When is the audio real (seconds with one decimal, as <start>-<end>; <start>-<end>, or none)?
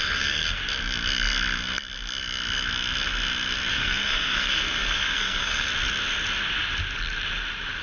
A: 0.6-3.7; 5.7-7.8